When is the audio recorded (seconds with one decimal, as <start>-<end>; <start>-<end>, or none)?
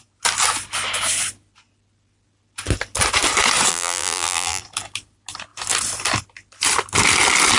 0.0-3.7; 4.6-7.6